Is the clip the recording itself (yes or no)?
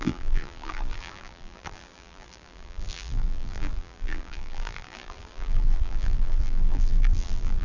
no